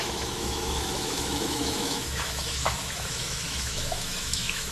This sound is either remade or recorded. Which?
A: remade